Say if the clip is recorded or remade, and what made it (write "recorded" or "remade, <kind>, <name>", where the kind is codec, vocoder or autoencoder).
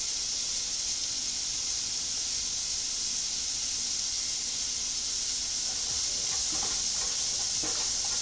recorded